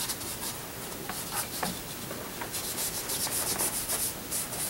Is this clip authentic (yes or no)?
yes